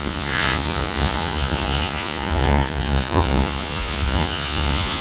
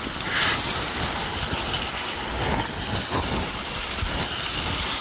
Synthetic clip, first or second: first